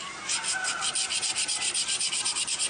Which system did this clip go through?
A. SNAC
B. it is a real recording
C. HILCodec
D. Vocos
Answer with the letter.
B